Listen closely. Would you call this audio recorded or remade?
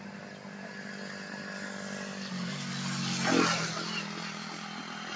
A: recorded